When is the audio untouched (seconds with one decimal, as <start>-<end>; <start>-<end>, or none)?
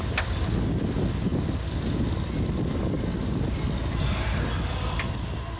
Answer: 0.0-5.6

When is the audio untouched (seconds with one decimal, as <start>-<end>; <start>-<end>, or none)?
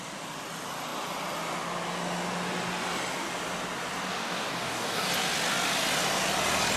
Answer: 0.0-4.1; 5.1-6.8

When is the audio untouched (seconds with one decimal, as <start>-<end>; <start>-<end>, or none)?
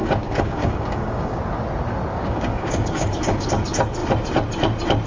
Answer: 1.4-2.1; 3.5-5.1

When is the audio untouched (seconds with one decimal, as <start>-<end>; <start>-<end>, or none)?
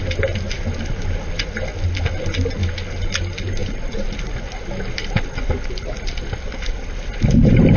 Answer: 0.0-7.8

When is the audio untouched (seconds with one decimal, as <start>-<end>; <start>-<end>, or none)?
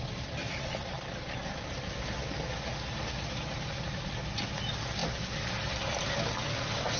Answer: 0.0-7.0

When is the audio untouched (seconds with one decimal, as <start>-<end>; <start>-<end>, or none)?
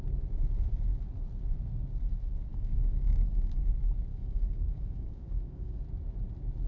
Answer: 0.0-2.5; 3.6-4.1; 5.8-6.7